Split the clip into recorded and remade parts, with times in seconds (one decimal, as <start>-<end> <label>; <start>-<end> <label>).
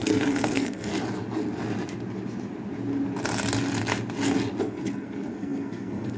0.0-0.9 remade; 0.9-4.6 recorded; 4.6-6.2 remade